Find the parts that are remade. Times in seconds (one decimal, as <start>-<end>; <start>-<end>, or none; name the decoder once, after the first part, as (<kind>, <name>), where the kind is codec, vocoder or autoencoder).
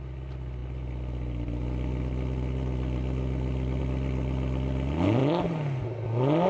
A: none